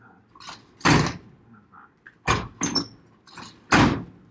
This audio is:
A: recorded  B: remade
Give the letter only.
A